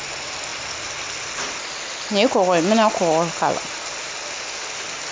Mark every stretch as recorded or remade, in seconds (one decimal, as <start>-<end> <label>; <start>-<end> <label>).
0.0-5.1 recorded